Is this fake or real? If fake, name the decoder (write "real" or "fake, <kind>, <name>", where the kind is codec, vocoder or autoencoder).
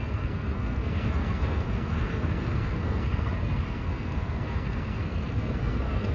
fake, codec, SNAC